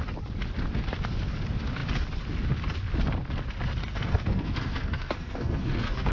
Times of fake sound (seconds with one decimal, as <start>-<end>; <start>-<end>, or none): 3.8-6.1